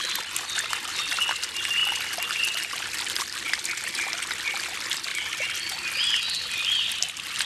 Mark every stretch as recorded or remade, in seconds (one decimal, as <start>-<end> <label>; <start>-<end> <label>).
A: 0.0-7.4 recorded